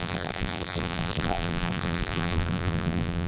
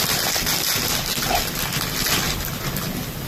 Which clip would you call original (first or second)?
second